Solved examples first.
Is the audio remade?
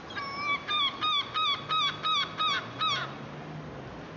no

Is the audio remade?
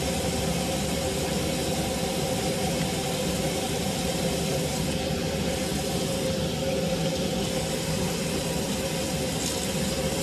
no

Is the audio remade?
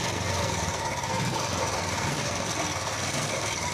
yes